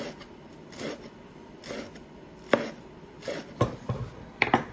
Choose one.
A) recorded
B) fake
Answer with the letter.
A